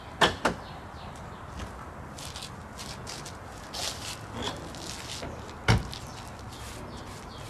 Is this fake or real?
real